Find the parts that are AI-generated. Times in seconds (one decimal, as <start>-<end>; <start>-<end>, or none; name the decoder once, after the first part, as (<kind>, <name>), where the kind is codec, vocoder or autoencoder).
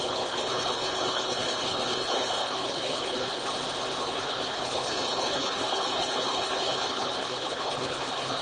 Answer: 0.0-3.5 (codec, HILCodec); 4.0-8.4